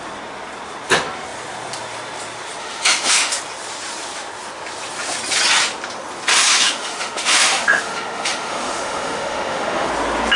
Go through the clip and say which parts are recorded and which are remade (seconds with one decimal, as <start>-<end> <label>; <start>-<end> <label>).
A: 0.0-2.6 recorded; 2.6-3.4 remade; 3.4-6.3 recorded; 6.3-9.9 remade; 9.9-10.4 recorded